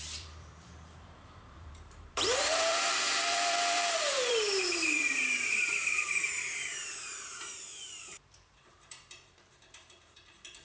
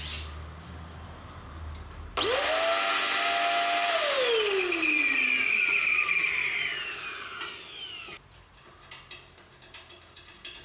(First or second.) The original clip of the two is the second